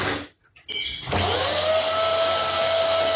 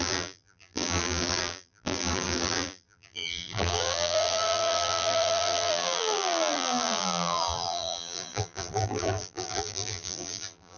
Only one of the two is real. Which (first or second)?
first